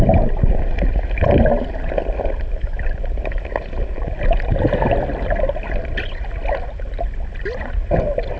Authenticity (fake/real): real